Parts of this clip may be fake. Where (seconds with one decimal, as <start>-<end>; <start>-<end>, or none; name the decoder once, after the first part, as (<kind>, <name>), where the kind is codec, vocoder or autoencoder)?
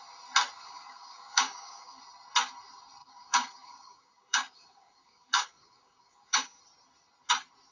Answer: 0.6-2.0 (codec, DAC); 3.0-6.6